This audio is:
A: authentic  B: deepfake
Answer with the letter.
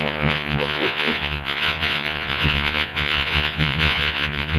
B